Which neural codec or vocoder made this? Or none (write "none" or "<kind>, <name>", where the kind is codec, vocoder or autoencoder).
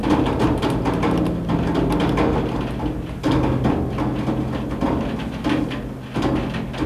none